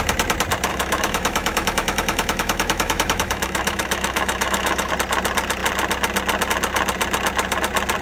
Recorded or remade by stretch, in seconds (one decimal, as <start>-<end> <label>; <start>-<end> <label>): 0.0-0.7 recorded; 0.7-4.9 remade; 4.9-8.0 recorded